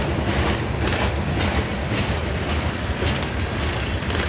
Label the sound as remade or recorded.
recorded